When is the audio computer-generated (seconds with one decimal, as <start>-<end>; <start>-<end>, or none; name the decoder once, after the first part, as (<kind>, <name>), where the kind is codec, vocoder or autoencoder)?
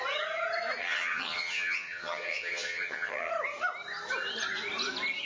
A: 0.8-3.3 (vocoder, HiFi-GAN)